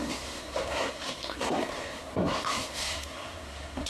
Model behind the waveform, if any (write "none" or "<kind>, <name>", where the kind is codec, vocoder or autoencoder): codec, SNAC